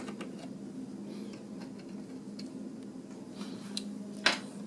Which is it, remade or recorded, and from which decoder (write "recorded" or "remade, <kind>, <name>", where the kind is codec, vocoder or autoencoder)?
recorded